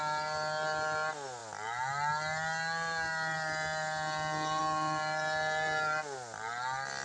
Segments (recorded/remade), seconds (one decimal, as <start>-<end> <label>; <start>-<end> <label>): 0.0-7.0 recorded